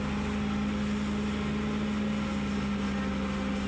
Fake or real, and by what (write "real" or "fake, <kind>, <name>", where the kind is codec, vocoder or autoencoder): real